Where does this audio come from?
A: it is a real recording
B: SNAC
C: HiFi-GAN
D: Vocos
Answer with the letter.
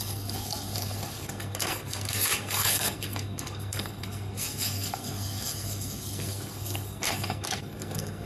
B